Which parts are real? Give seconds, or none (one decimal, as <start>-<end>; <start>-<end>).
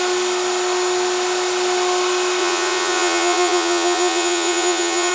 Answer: 0.0-2.4